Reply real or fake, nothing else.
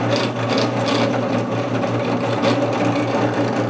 real